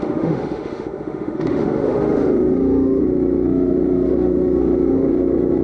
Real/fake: fake